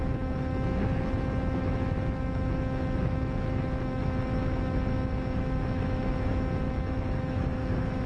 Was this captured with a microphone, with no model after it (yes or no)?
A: no